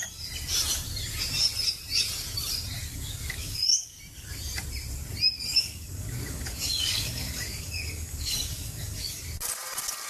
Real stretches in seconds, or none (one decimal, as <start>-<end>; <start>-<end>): 0.0-2.9; 4.0-5.5; 9.2-10.1